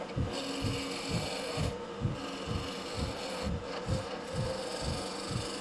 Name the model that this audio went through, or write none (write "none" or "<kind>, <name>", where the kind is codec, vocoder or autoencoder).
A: none